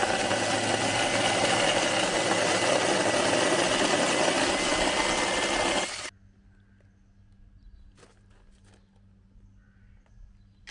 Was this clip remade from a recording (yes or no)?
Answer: no